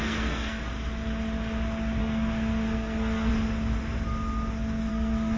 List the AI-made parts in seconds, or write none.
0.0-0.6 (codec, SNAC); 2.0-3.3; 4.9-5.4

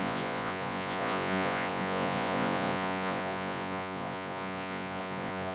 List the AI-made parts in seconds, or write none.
0.0-5.5 (vocoder, Vocos)

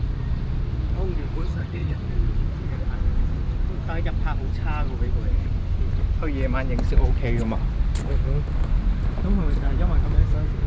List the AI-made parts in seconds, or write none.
1.5-2.0 (vocoder, HiFi-GAN)

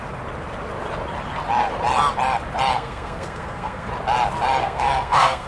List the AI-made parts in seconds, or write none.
2.7-3.9 (codec, SNAC); 4.6-5.5

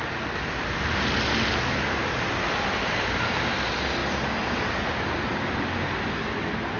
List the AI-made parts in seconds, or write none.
4.0-5.4 (vocoder, BigVGAN v2)